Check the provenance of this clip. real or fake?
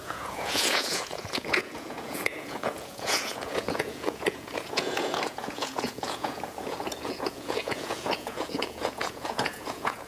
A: fake